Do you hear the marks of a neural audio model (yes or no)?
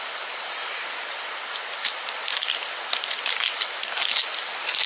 no